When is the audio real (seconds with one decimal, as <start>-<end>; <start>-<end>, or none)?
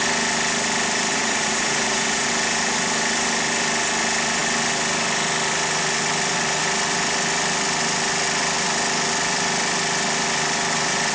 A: 0.0-1.1; 2.3-11.1